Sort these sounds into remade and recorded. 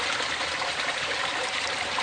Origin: recorded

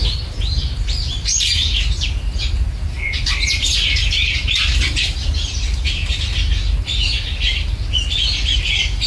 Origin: recorded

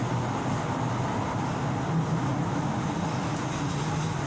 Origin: recorded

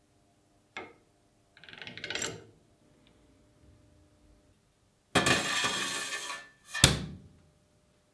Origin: recorded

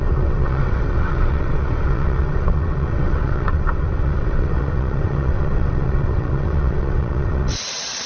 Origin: remade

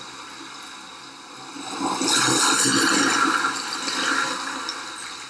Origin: recorded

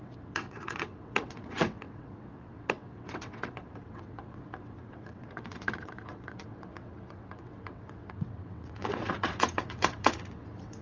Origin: remade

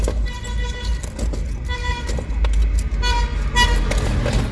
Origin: recorded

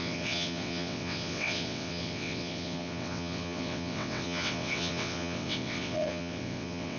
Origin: remade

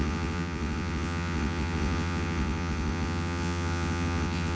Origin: remade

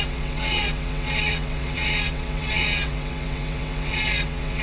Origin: remade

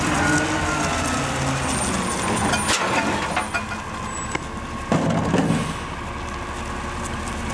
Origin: recorded